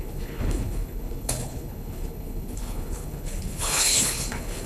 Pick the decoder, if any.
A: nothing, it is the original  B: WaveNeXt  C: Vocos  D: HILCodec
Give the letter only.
D